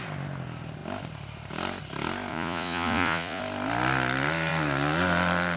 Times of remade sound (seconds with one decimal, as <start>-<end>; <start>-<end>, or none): 2.3-3.4